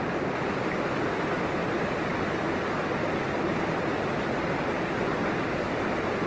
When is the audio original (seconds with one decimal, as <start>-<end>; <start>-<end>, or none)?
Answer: 0.0-6.3